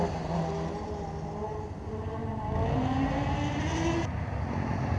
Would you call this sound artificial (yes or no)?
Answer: no